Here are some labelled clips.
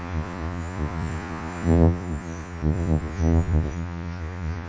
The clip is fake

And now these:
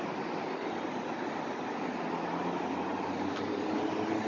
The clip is real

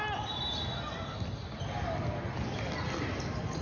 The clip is real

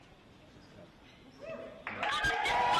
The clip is real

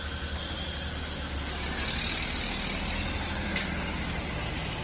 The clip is real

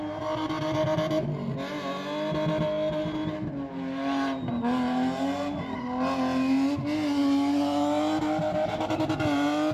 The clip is real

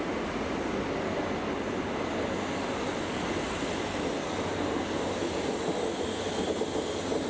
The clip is real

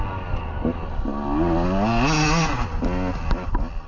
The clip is real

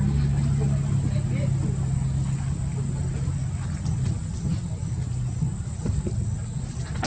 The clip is real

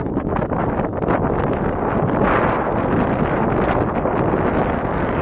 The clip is real